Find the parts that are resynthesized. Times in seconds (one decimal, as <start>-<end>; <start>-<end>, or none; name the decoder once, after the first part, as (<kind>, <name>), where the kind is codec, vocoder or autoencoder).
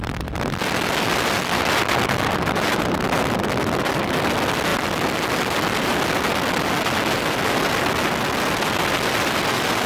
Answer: none